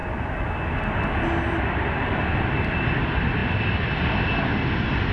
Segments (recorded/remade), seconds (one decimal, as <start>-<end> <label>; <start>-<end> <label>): 0.0-5.1 recorded